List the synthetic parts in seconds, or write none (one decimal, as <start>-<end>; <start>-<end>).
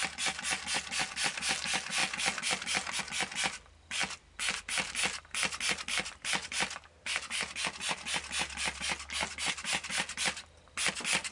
none